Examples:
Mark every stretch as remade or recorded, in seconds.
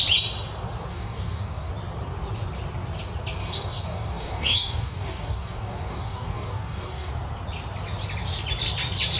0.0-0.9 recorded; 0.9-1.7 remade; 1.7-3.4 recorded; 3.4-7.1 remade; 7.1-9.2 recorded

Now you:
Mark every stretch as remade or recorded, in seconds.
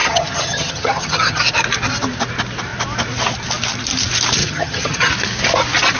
0.0-1.4 remade; 1.4-4.4 recorded; 4.4-5.1 remade; 5.1-6.0 recorded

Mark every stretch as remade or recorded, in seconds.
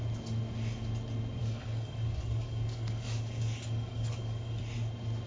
0.0-1.4 recorded; 1.4-4.6 remade; 4.6-5.3 recorded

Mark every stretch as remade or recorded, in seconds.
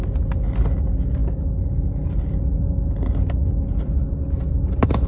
0.0-5.1 recorded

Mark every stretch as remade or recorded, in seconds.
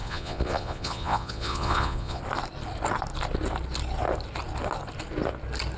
0.0-2.2 remade; 2.2-5.8 recorded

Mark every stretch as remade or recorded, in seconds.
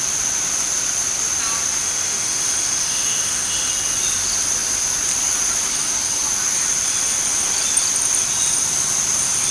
0.0-1.8 recorded; 1.8-3.7 remade; 3.7-9.5 recorded